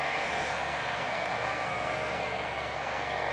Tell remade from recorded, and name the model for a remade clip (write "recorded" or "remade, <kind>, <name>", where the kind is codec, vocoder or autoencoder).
remade, codec, SNAC